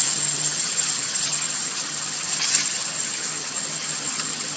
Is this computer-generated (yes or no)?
yes